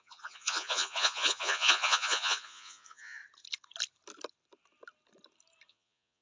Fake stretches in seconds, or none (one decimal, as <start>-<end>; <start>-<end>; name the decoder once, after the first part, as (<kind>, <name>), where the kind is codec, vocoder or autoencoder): 0.0-3.2 (vocoder, Vocos); 5.7-6.2